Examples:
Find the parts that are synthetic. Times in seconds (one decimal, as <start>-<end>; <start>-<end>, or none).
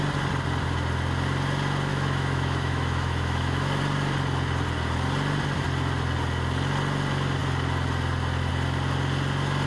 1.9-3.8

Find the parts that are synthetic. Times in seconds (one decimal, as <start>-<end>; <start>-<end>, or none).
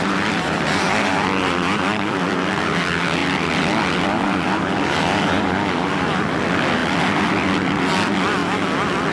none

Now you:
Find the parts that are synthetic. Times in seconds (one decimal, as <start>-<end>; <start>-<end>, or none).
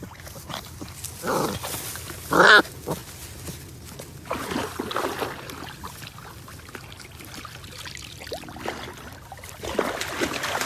none